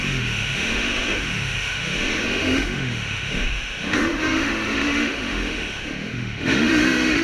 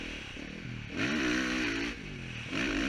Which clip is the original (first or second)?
second